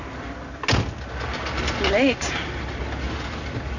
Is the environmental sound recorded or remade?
recorded